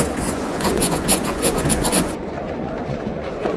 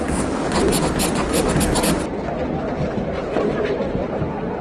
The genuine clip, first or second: second